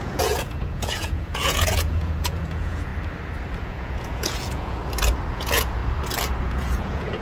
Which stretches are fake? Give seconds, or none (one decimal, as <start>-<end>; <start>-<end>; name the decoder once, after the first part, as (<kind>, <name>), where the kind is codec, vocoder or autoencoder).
0.0-2.9 (vocoder, Vocos); 3.6-4.8; 5.3-5.8; 6.4-7.2